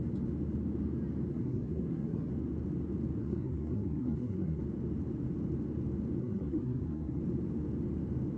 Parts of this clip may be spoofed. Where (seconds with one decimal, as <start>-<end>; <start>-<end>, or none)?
1.3-2.3; 3.2-4.6; 6.2-7.2